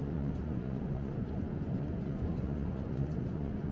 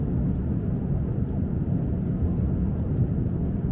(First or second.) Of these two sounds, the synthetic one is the first